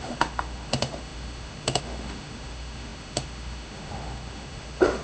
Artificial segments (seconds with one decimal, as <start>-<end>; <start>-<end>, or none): 0.0-5.0